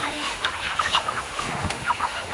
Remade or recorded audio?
remade